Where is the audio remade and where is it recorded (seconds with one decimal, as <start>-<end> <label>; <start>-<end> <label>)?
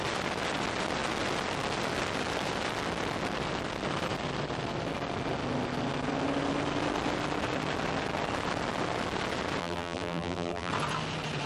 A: 0.0-9.6 recorded; 9.6-10.7 remade; 10.7-11.5 recorded